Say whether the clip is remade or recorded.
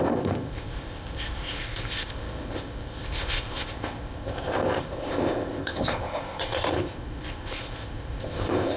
remade